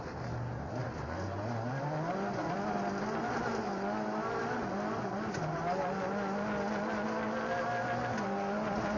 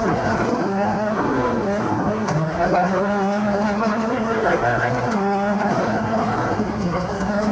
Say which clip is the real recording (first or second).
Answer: first